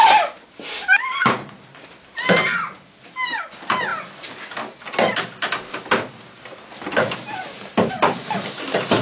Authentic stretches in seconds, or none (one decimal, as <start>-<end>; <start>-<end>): 0.0-9.0